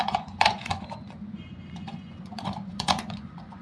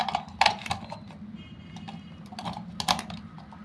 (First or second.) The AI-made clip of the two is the first